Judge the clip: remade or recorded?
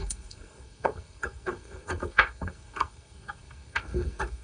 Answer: remade